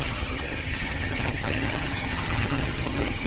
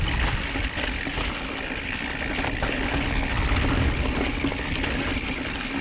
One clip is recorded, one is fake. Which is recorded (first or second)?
second